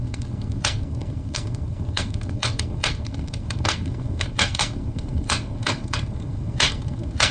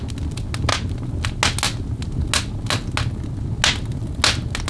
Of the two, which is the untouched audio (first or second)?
second